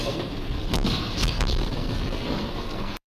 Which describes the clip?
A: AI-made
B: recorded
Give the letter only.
A